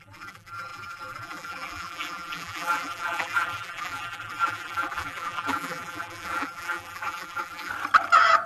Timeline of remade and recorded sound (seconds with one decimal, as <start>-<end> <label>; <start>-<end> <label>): 0.0-7.7 remade; 7.7-8.5 recorded